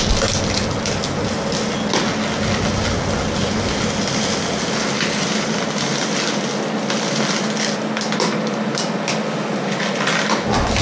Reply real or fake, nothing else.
real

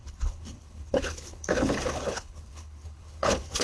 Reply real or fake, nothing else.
fake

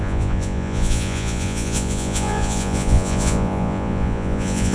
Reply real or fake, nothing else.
fake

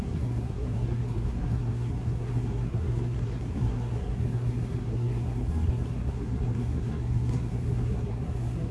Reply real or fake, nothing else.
fake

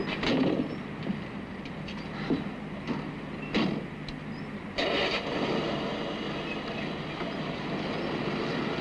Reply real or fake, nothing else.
real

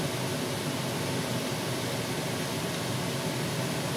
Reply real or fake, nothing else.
real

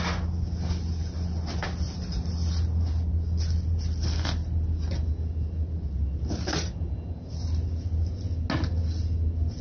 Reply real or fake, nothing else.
real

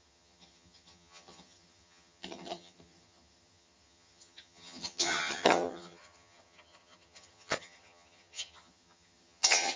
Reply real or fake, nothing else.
fake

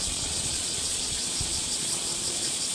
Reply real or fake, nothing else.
fake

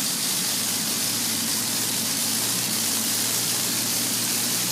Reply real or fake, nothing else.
fake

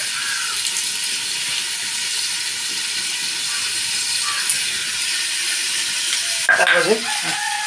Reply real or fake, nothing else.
real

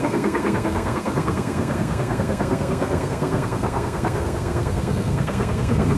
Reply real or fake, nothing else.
fake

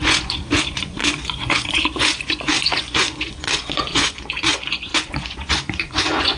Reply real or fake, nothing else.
fake